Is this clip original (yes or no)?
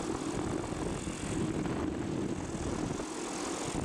yes